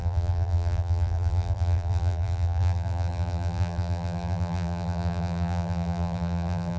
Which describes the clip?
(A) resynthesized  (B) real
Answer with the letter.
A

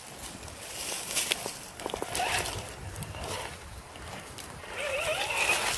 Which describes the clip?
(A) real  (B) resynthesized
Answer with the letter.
A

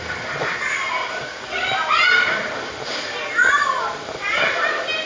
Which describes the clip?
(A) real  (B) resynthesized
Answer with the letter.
A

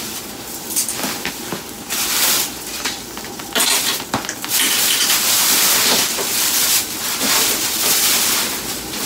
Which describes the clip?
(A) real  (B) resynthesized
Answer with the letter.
B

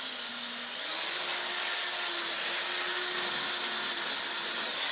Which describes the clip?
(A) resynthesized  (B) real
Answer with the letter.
B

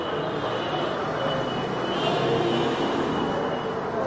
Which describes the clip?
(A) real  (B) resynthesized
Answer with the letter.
A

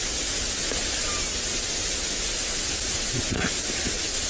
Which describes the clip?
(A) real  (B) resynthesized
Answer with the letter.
A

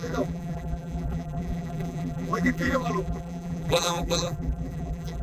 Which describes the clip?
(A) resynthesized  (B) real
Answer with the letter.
A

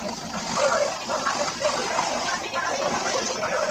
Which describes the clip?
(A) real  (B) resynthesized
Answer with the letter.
A